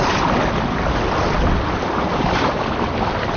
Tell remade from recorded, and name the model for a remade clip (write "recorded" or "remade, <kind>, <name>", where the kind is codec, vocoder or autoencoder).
recorded